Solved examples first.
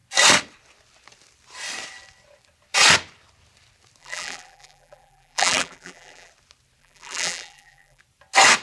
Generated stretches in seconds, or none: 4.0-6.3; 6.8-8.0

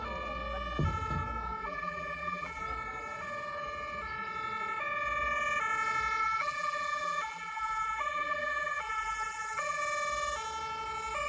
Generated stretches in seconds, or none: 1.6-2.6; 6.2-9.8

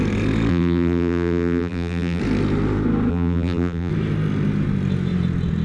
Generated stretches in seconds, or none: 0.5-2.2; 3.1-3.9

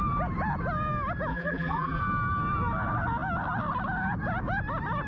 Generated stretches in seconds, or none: 1.3-2.0